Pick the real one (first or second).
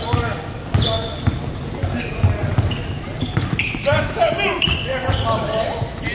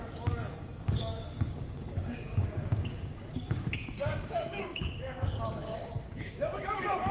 first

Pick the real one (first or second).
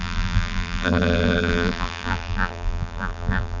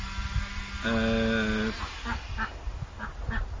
second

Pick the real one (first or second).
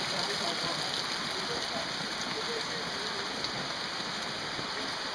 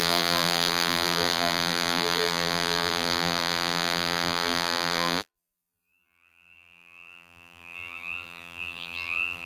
first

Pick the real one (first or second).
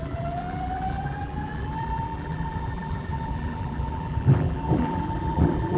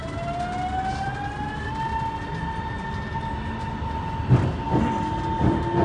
second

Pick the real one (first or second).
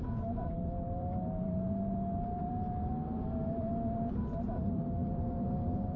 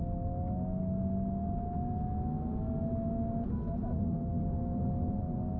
second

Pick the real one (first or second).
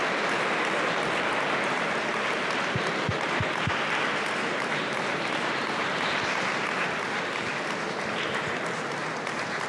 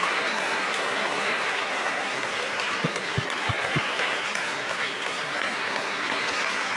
first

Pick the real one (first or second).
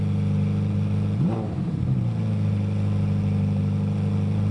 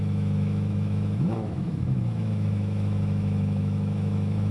first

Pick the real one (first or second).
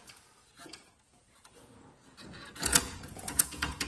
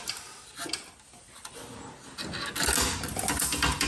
second